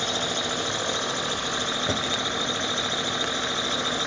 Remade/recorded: recorded